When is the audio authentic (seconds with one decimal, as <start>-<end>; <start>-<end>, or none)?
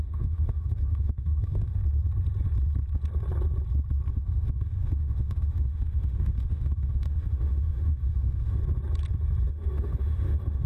1.8-4.1; 8.6-9.5